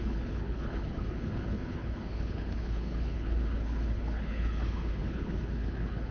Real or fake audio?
fake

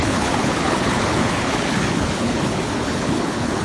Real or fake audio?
fake